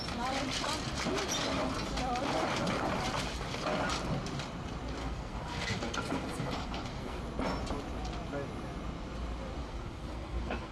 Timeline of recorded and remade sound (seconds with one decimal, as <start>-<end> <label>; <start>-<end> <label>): 0.0-5.0 recorded; 5.0-7.2 remade; 7.2-9.6 recorded; 9.6-10.7 remade